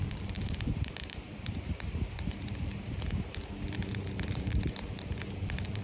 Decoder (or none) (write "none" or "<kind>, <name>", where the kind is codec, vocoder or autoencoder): vocoder, BigVGAN v2